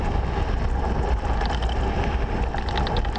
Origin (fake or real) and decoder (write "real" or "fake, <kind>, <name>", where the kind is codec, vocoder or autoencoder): real